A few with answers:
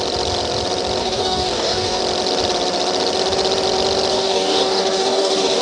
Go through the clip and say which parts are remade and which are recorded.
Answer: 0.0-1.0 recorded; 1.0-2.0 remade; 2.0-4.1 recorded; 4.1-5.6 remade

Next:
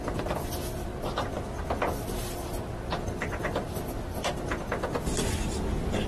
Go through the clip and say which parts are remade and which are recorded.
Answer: 0.0-6.1 recorded

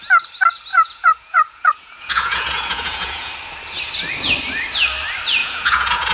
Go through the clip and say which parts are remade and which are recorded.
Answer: 0.0-0.7 recorded; 0.7-3.3 remade; 3.3-5.4 recorded; 5.4-6.1 remade

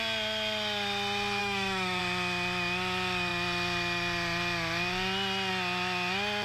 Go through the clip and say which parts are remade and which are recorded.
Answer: 0.0-1.4 recorded; 1.4-2.0 remade; 2.0-6.4 recorded

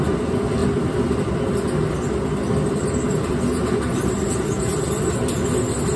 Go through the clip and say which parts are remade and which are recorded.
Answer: 0.0-6.0 recorded

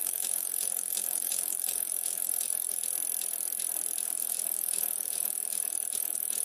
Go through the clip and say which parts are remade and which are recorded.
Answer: 0.0-2.8 remade; 2.8-4.0 recorded; 4.0-6.4 remade